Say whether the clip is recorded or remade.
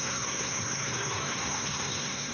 remade